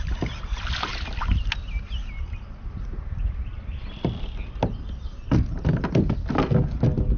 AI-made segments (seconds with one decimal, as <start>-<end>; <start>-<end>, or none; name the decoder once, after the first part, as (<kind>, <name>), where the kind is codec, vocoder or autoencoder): none